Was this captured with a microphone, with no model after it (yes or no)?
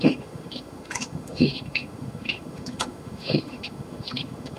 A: no